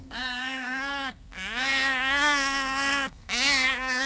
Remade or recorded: remade